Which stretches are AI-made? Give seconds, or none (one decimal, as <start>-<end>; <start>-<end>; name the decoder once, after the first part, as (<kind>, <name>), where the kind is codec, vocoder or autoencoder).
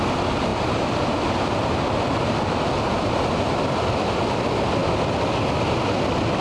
none